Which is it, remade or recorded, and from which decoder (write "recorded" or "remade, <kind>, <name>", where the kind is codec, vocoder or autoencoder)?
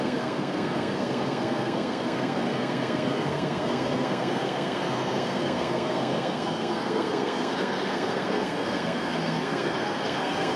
remade, codec, SNAC